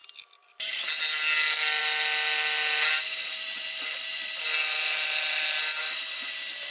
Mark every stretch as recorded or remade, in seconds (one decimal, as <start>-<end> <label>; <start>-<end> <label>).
0.0-6.7 recorded